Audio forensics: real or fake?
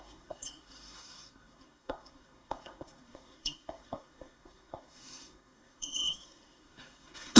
fake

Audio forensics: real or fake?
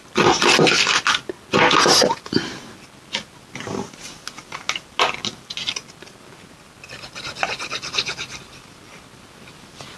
real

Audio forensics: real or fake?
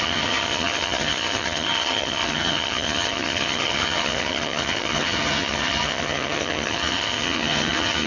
fake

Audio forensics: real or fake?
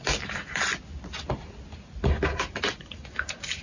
real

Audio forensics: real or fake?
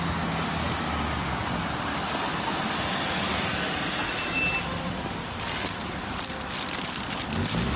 real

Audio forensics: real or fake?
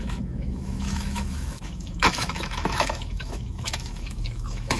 fake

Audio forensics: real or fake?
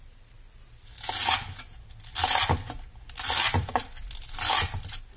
real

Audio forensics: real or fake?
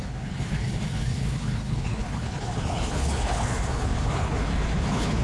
fake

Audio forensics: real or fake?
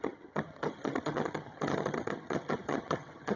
fake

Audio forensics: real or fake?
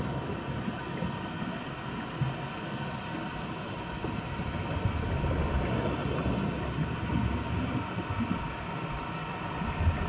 real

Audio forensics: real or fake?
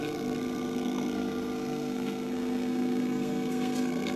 fake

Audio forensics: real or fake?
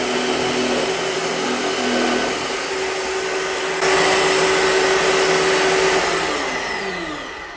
real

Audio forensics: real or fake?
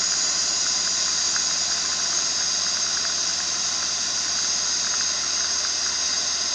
real